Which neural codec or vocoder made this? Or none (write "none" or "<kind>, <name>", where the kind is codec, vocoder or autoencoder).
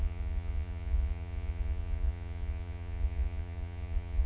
vocoder, Vocos